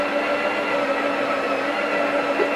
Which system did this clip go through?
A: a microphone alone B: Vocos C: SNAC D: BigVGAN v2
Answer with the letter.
A